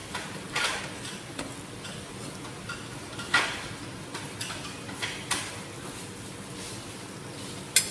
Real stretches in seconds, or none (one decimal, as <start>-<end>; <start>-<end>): 0.8-7.9